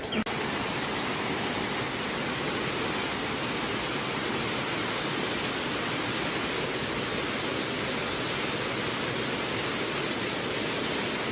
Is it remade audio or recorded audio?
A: recorded